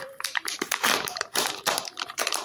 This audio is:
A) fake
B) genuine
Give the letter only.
A